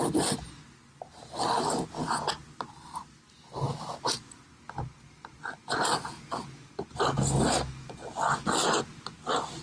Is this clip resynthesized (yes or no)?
no